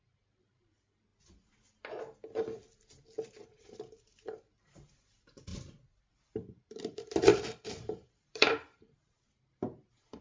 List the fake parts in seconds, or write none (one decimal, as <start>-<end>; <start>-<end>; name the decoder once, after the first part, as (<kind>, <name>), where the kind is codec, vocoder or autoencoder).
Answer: 0.0-1.1 (vocoder, BigVGAN v2); 3.4-5.5; 6.1-10.2